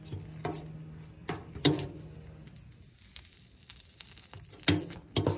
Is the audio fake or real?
real